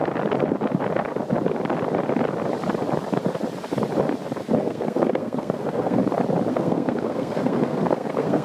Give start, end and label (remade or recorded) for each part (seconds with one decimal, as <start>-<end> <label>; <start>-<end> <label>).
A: 0.0-4.6 recorded; 4.6-6.0 remade; 6.0-6.5 recorded; 6.5-8.4 remade